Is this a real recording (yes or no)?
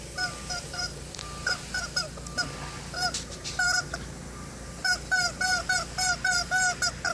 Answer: yes